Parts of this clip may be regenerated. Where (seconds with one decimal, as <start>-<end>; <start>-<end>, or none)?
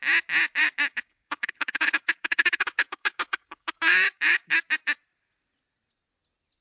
0.6-4.6